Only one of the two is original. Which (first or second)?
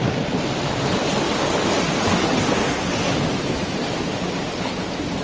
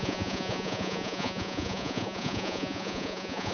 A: first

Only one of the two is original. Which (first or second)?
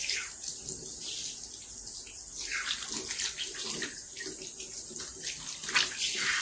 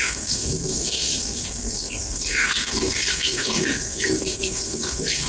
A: first